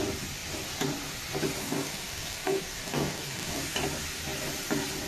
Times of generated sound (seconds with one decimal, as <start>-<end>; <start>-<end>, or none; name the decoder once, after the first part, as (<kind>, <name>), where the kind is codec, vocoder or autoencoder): 1.6-3.6 (codec, DAC)